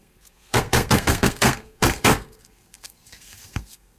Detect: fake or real fake